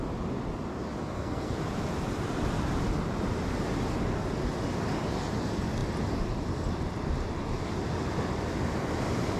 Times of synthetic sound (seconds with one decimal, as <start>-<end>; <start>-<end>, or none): 1.0-1.6

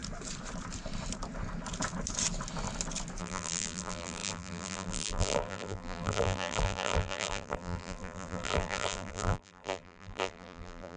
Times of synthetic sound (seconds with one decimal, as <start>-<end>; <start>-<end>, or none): 3.2-11.0

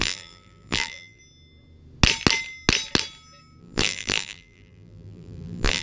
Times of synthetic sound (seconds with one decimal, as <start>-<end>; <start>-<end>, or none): 0.0-1.2; 3.6-5.8

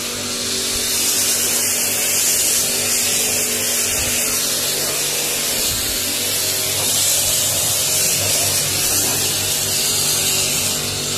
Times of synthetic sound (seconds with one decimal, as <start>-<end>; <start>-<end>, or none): none